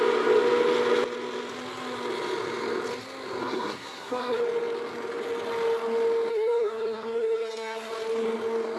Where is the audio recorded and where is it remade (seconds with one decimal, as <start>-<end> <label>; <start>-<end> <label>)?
0.0-3.4 recorded; 3.4-4.4 remade; 4.4-6.3 recorded; 6.3-7.9 remade; 7.9-8.8 recorded